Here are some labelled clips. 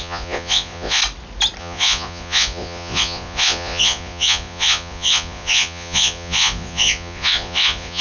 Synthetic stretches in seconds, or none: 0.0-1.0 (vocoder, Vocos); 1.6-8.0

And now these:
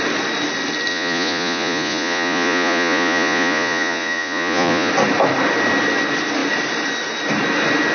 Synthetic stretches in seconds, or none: 0.9-4.9 (vocoder, Vocos)

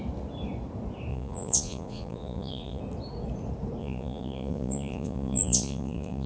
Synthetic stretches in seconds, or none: 1.1-2.8 (vocoder, Vocos); 3.8-6.3

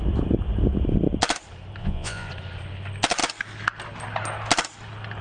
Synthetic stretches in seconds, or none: 1.8-2.3 (vocoder, Vocos)

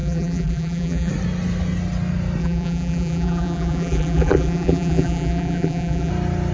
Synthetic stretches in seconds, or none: 0.0-1.1 (vocoder, BigVGAN v2); 2.4-6.1

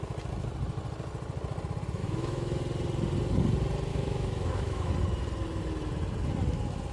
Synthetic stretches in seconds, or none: 2.0-2.6 (autoencoder, DAC-VAE); 3.9-4.9